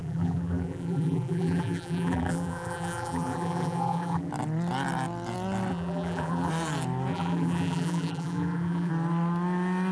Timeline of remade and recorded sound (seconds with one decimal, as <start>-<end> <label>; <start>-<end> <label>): 0.0-4.3 remade; 4.3-5.7 recorded; 5.7-6.5 remade; 6.5-7.1 recorded; 7.1-8.9 remade; 8.9-9.9 recorded